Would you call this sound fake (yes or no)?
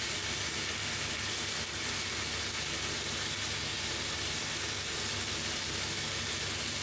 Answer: no